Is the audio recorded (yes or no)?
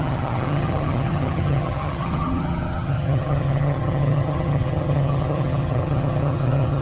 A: no